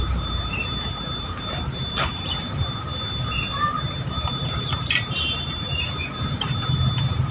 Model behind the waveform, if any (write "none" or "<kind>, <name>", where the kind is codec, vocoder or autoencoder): vocoder, BigVGAN v2